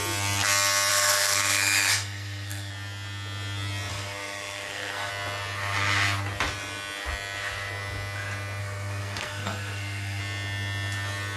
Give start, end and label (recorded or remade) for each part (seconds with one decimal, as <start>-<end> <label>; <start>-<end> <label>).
0.0-0.9 recorded; 0.9-2.7 remade; 2.7-3.9 recorded; 3.9-5.1 remade; 5.1-8.6 recorded; 8.6-10.2 remade; 10.2-11.4 recorded